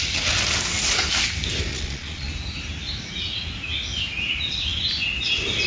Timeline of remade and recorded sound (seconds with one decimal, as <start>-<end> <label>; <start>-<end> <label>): 0.0-1.7 recorded; 1.7-2.3 remade; 2.3-5.7 recorded